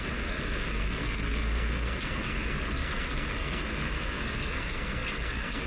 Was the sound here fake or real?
fake